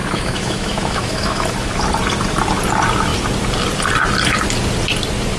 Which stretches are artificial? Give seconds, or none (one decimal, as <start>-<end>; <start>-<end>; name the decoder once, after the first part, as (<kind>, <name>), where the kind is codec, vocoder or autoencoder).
0.0-1.7 (autoencoder, DAC-VAE)